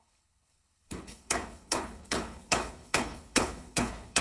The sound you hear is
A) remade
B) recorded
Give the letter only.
A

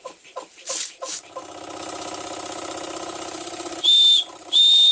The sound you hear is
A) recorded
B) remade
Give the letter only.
A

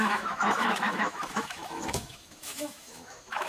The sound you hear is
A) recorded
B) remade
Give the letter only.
B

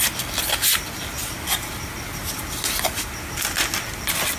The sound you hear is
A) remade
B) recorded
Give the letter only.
B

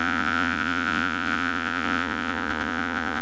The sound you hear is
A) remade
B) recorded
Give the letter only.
A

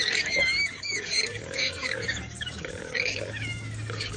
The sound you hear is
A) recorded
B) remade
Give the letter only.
B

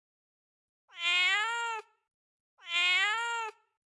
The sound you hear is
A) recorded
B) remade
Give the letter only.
B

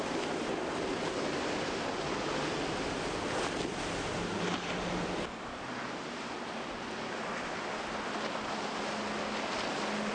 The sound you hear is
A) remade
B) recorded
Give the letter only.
B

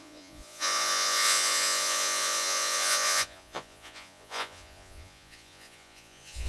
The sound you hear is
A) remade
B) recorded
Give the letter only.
A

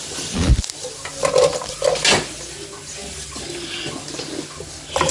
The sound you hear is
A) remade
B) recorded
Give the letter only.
B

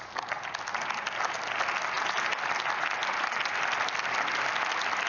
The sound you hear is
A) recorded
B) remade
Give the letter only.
A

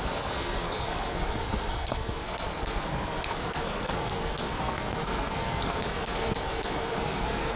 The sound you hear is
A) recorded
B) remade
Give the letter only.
B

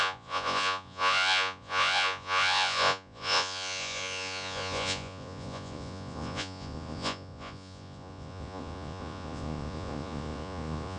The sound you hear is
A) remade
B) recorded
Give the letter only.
A